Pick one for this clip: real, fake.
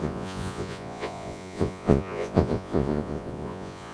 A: fake